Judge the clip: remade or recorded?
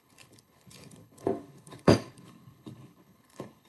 remade